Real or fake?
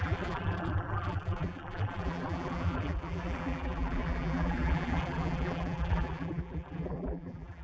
fake